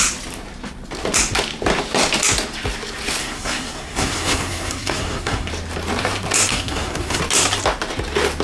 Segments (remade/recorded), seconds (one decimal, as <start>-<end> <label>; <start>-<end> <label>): 0.0-3.2 recorded; 3.2-5.5 remade; 5.5-6.5 recorded; 6.5-7.2 remade; 7.2-8.4 recorded